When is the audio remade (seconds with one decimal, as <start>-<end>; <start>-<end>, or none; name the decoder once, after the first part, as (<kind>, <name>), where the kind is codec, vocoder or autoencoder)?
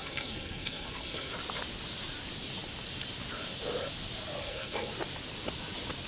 0.0-1.3 (codec, SNAC); 4.4-4.9